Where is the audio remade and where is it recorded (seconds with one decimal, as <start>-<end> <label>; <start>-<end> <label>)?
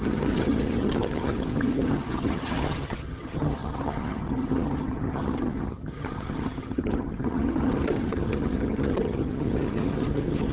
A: 0.0-10.5 remade